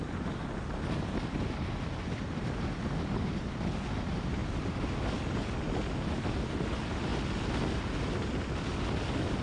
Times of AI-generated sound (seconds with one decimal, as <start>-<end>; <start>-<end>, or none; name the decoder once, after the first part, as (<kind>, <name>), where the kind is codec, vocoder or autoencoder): none